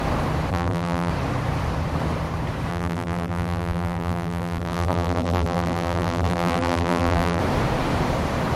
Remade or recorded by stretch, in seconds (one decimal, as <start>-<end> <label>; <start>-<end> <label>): 0.0-0.5 recorded; 0.5-1.1 remade; 1.1-2.7 recorded; 2.7-7.4 remade; 7.4-8.6 recorded